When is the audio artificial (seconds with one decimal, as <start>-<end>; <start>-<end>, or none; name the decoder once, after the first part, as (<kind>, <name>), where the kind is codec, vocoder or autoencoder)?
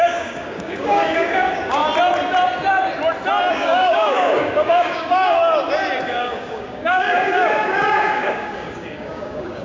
0.0-1.8 (codec, DAC); 3.5-5.4; 6.0-9.6